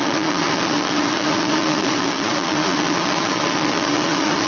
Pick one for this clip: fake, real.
fake